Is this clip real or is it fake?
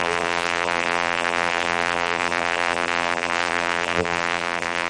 fake